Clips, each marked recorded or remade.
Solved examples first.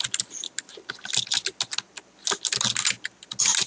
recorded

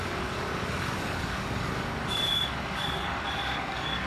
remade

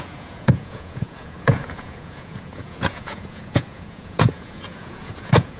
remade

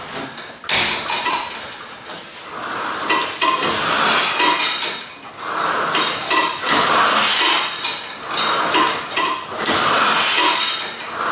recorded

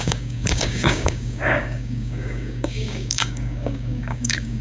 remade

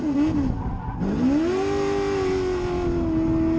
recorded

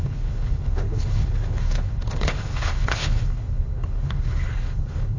remade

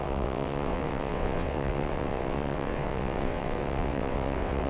remade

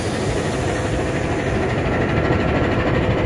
recorded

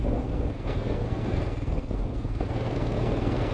remade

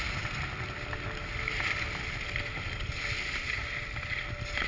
recorded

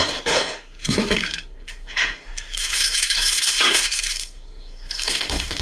remade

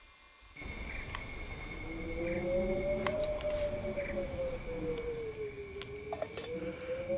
recorded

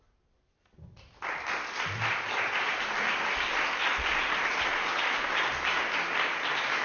recorded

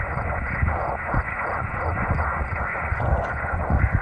remade